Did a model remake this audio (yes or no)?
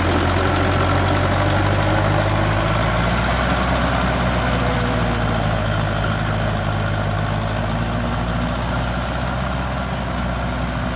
no